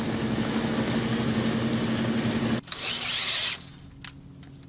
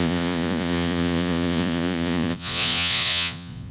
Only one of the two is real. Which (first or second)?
first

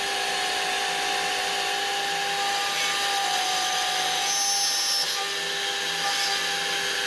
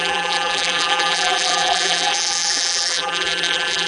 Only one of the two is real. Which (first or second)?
first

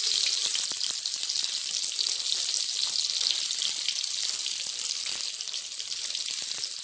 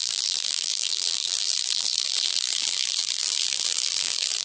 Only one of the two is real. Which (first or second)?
first